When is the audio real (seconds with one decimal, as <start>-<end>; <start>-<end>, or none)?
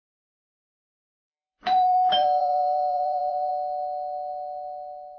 0.0-0.4; 3.5-5.2